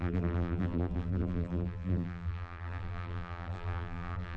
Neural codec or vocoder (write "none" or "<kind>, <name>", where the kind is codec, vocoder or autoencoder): vocoder, BigVGAN v2